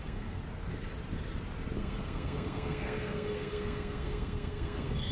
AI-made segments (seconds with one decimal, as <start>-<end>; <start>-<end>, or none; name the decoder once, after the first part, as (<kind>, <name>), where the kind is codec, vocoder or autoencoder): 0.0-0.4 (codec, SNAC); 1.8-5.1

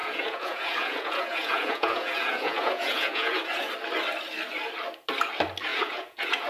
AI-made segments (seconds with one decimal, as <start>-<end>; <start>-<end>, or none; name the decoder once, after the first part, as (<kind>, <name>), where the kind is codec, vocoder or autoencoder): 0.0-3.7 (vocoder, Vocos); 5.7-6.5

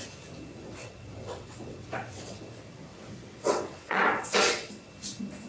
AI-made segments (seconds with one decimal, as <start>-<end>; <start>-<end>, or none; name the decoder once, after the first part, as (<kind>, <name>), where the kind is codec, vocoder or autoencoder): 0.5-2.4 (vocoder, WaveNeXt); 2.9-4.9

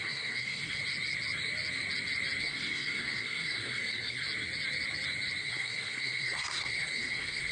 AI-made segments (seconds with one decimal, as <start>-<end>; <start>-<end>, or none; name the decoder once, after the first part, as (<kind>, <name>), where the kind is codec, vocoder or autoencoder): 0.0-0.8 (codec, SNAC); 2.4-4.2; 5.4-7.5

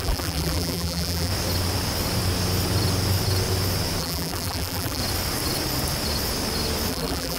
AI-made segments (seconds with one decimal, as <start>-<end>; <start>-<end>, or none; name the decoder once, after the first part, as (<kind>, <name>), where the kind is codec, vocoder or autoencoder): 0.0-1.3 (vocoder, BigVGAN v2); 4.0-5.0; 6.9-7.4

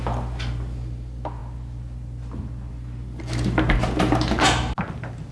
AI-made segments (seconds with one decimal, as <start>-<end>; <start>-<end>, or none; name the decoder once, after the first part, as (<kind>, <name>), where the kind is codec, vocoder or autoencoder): none

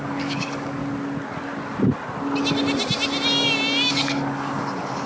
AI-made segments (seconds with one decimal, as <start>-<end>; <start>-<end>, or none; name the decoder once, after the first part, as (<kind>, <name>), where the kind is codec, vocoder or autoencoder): 0.0-0.8 (codec, DAC); 3.9-5.1

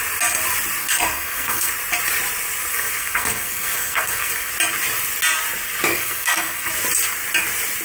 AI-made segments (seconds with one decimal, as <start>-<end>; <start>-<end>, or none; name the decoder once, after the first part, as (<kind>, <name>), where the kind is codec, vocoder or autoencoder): 0.8-1.7 (codec, SNAC); 2.7-4.5; 5.9-6.7